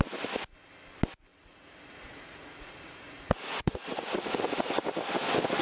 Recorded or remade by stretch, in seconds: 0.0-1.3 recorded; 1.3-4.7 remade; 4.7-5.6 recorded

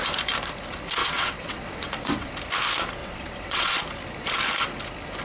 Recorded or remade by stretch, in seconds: 0.0-1.0 recorded; 1.0-2.3 remade; 2.3-3.0 recorded; 3.0-3.8 remade; 3.8-5.2 recorded

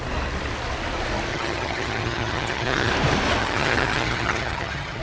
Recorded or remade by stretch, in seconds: 0.0-1.3 recorded; 1.3-2.9 remade; 2.9-3.4 recorded; 3.4-5.0 remade